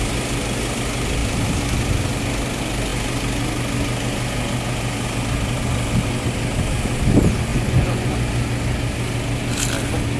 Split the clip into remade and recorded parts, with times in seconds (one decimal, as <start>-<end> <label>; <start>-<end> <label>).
0.0-7.5 recorded; 7.5-8.1 remade; 8.1-10.2 recorded